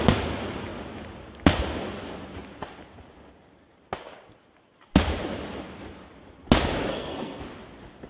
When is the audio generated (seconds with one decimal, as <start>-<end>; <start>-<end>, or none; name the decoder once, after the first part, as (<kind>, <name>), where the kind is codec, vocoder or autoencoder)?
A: 6.9-7.4 (codec, SNAC)